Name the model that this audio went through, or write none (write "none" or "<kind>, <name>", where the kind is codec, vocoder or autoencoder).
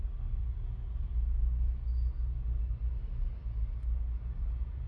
none